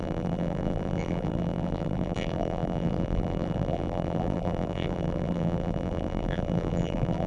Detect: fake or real fake